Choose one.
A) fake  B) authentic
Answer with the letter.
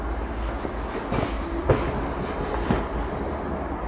B